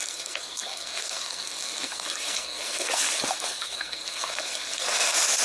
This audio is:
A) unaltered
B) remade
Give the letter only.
B